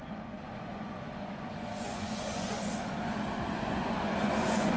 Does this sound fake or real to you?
fake